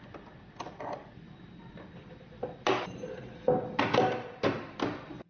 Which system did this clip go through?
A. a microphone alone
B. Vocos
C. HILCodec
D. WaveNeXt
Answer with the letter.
A